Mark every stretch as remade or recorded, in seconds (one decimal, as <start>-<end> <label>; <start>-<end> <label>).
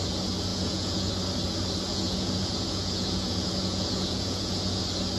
0.0-0.5 recorded; 0.5-1.1 remade; 1.1-1.9 recorded; 1.9-4.8 remade; 4.8-5.2 recorded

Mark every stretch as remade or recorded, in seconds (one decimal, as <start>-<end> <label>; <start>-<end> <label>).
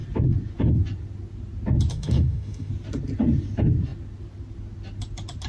0.0-1.9 recorded; 1.9-2.7 remade; 2.7-5.5 recorded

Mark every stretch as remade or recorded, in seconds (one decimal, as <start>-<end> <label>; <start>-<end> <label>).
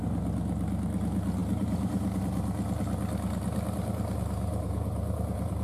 0.0-1.4 recorded; 1.4-2.2 remade; 2.2-4.5 recorded; 4.5-5.6 remade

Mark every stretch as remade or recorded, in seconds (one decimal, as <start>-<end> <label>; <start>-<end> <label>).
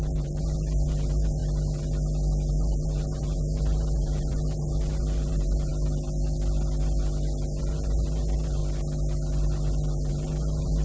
0.0-1.4 remade; 1.4-2.5 recorded; 2.5-5.7 remade; 5.7-7.6 recorded; 7.6-8.6 remade; 8.6-10.1 recorded; 10.1-10.8 remade